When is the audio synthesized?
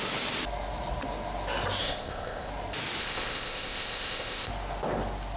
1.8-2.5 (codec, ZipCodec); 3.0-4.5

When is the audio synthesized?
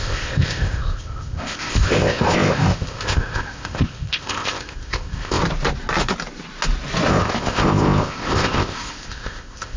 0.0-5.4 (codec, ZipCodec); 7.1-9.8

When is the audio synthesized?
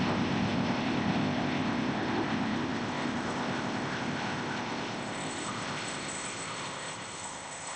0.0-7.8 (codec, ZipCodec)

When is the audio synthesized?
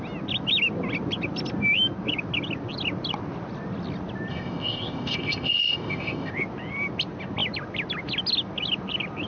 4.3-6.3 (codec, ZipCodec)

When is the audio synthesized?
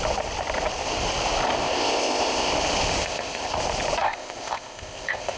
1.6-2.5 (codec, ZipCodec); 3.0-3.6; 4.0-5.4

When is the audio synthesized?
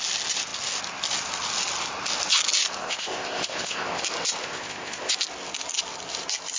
2.8-4.0 (codec, ZipCodec); 4.4-5.1